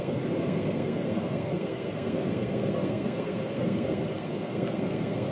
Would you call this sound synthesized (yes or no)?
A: yes